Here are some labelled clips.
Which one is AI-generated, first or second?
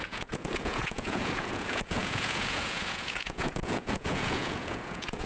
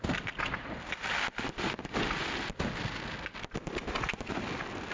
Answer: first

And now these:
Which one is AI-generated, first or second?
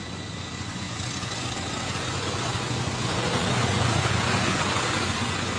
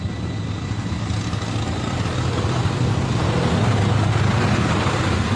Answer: first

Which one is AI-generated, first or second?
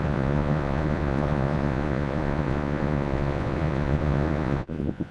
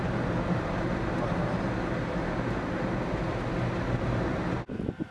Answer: first